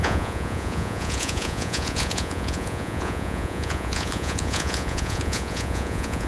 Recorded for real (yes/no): no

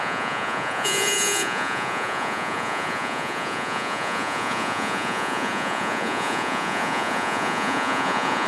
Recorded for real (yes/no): no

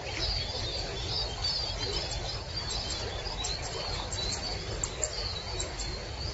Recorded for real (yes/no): yes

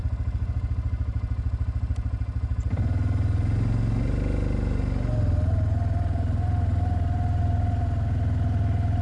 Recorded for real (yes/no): yes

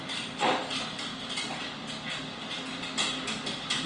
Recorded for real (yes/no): yes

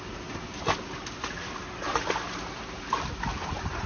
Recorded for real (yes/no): yes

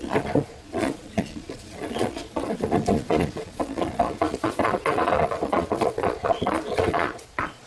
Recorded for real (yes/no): no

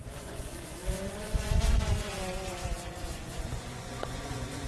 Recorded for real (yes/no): no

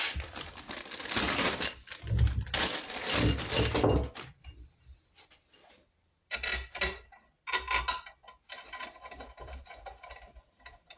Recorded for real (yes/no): yes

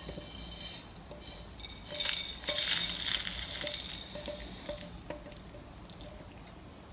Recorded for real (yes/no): yes